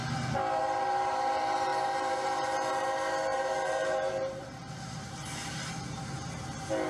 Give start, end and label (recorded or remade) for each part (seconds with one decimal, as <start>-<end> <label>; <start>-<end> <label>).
0.0-0.6 recorded; 0.6-6.9 remade